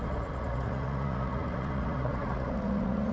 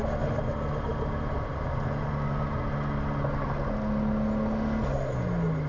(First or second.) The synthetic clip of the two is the first